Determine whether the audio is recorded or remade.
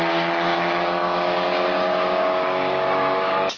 remade